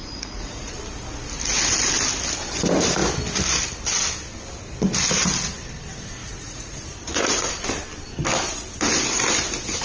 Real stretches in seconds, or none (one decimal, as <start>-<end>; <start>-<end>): 0.8-6.2; 7.5-9.8